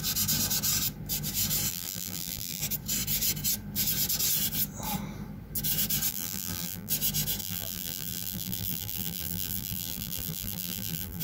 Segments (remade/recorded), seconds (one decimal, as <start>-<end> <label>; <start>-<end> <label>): 0.0-1.7 recorded; 1.7-2.6 remade; 2.6-6.1 recorded; 6.1-6.9 remade; 6.9-7.4 recorded; 7.4-11.2 remade